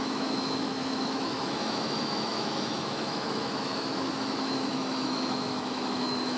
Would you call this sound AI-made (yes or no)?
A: yes